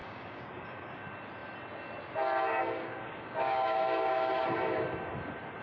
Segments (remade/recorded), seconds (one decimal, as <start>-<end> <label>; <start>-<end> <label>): 0.0-0.9 remade; 0.9-2.6 recorded; 2.6-4.3 remade; 4.3-5.6 recorded